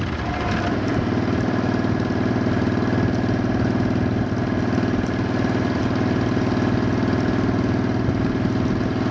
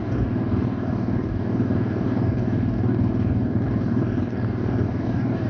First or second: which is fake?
second